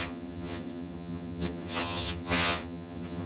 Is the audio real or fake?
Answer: fake